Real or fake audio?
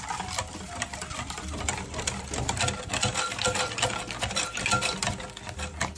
real